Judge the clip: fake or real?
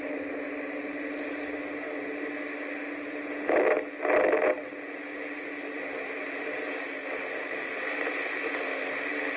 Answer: real